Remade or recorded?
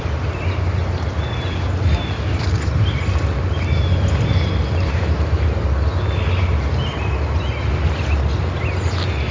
recorded